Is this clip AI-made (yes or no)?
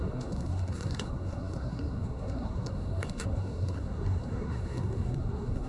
yes